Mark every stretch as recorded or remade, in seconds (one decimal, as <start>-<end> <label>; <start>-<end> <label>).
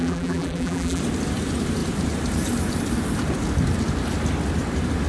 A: 0.0-1.0 remade; 1.0-5.1 recorded